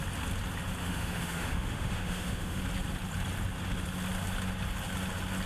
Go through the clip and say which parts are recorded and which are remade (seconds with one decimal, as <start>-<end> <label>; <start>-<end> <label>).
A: 0.0-0.8 recorded; 0.8-2.6 remade; 2.6-5.5 recorded